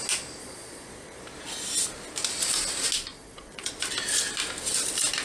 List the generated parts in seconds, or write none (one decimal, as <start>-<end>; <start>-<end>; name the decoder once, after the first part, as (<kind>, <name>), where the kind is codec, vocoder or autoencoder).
0.4-1.2 (vocoder, Vocos); 3.1-3.7